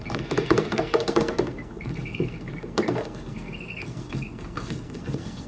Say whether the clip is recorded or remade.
remade